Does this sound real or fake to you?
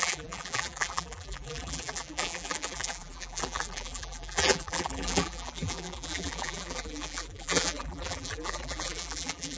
fake